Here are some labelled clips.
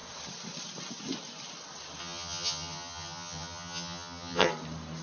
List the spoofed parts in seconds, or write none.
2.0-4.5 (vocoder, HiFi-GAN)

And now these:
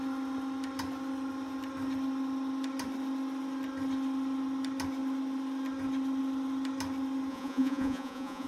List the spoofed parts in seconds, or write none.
7.3-8.5 (vocoder, Vocos)

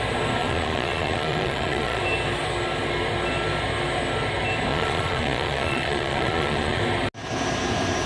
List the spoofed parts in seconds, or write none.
0.4-2.0 (vocoder, Vocos); 4.7-6.8

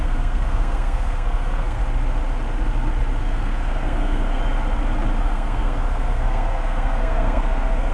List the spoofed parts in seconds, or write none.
0.0-1.8 (codec, SNAC); 3.2-4.4; 5.2-7.9

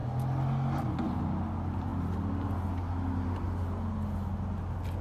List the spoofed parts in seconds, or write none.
none